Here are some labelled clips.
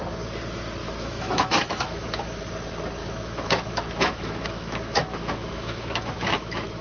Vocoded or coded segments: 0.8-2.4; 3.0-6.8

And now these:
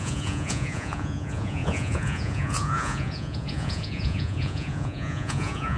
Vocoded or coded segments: 0.0-5.8

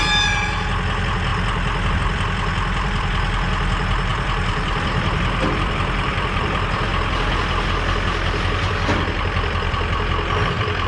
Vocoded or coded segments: 0.0-1.3; 1.9-6.9; 9.2-10.9

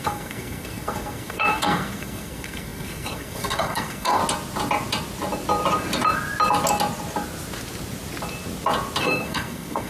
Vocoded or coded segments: 0.0-4.2; 9.0-9.9

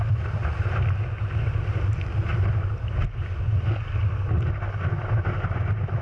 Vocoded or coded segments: none

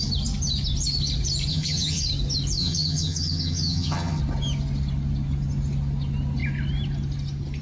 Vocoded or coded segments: 1.5-2.0; 2.6-4.2

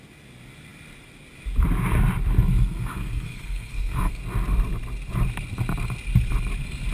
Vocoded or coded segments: 2.5-4.2